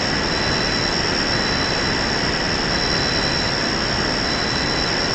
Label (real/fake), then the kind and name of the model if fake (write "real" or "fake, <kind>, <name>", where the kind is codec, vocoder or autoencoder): real